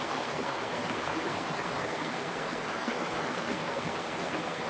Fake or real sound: fake